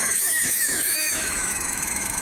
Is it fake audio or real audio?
fake